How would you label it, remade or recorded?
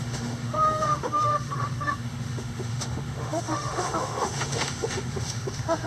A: remade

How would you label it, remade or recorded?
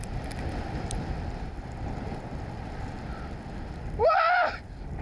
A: remade